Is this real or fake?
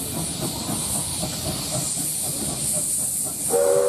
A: real